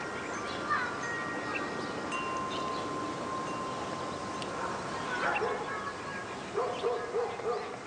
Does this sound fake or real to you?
real